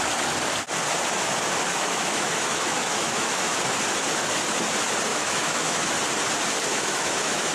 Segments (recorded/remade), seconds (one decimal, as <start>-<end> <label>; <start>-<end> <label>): 0.0-1.7 recorded; 1.7-3.6 remade; 3.6-5.1 recorded; 5.1-5.9 remade; 5.9-6.7 recorded; 6.7-7.5 remade